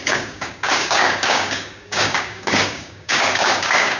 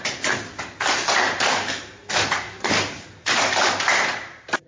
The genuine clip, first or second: second